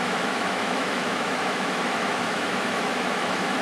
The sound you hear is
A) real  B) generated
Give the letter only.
B